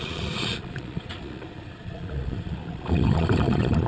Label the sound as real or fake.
fake